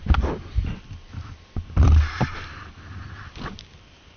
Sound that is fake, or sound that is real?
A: real